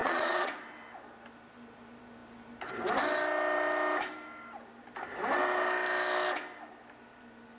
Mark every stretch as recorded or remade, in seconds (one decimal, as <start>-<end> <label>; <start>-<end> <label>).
0.0-0.5 remade; 0.5-7.6 recorded